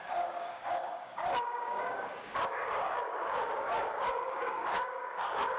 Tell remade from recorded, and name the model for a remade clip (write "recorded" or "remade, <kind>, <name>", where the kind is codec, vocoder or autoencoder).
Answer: remade, codec, DAC